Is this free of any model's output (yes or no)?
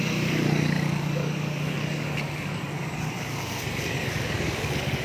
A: no